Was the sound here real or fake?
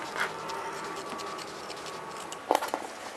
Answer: real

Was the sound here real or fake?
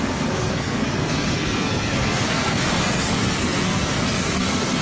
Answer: fake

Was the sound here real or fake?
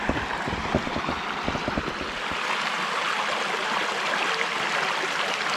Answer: real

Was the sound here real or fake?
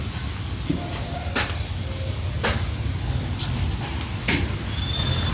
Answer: real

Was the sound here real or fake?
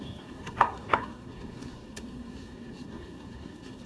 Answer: fake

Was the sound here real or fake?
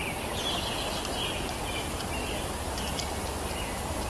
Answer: real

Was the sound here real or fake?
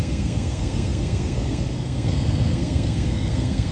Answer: fake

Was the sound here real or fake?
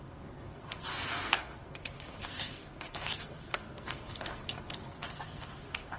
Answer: fake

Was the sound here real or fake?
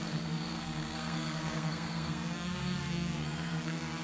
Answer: fake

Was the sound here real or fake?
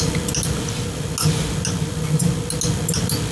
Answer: real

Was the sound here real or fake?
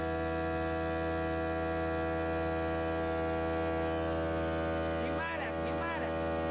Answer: real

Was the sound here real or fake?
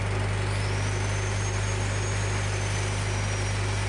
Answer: real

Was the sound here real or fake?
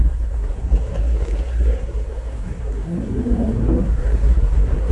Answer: fake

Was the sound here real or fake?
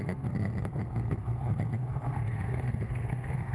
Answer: fake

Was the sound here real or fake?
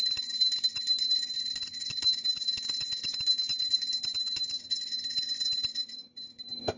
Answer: real